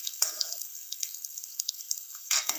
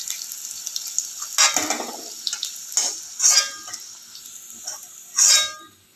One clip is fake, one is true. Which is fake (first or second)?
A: first